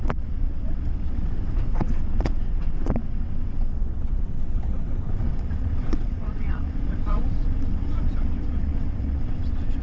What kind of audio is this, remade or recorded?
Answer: remade